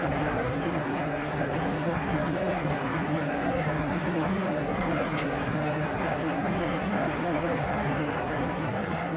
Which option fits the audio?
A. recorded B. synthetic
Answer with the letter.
B